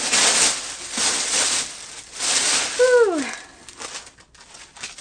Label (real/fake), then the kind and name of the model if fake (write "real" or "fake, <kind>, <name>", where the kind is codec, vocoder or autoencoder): real